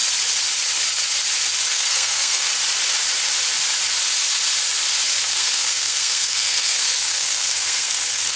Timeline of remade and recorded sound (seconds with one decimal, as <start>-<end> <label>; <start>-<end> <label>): 0.0-1.7 recorded; 1.7-2.5 remade; 2.5-5.3 recorded; 5.3-8.4 remade